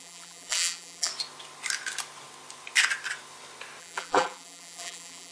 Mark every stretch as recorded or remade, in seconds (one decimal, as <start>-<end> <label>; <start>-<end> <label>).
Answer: 0.0-1.1 remade; 1.1-3.8 recorded; 3.8-5.3 remade